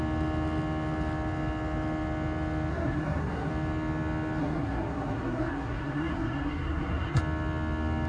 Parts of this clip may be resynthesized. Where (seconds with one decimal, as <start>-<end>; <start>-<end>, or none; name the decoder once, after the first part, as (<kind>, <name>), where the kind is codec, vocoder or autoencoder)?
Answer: 2.7-3.5 (codec, SNAC); 4.4-7.2